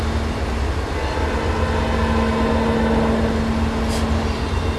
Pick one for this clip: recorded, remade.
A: recorded